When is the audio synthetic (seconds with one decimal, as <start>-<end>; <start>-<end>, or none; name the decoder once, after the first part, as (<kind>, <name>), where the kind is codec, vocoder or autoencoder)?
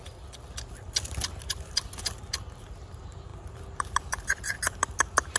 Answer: none